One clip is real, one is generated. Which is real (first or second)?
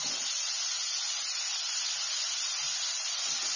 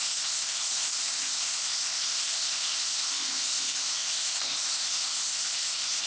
first